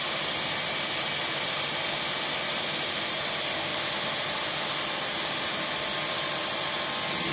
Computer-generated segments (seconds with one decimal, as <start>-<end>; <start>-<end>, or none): 3.7-4.8